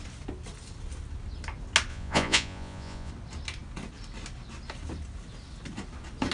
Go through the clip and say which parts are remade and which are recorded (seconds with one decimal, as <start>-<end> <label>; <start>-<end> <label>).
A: 0.0-1.9 recorded; 1.9-3.1 remade; 3.1-6.3 recorded